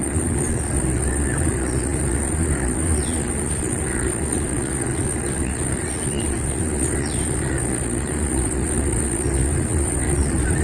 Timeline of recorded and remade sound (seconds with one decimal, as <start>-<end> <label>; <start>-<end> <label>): 0.0-10.6 remade

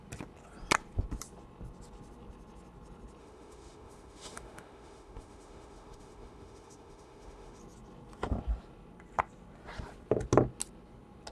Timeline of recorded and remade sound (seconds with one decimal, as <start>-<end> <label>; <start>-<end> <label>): 0.0-3.2 recorded; 3.2-7.6 remade; 7.6-11.3 recorded

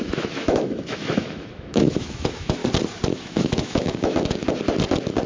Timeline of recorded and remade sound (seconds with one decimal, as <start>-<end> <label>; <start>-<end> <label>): 0.0-2.6 remade; 2.6-3.1 recorded; 3.1-4.4 remade; 4.4-5.3 recorded

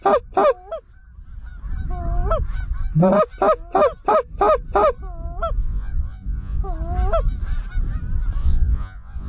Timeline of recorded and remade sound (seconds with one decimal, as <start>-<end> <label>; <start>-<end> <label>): 0.0-5.6 recorded; 5.6-6.6 remade; 6.6-8.4 recorded; 8.4-9.3 remade